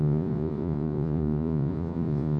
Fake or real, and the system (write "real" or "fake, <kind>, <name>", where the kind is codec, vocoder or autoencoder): fake, vocoder, Vocos